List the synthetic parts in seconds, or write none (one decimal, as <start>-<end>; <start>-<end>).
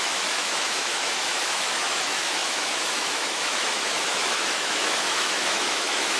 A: 0.0-6.2